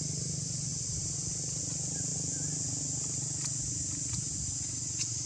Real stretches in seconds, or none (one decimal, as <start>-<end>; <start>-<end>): 0.0-5.3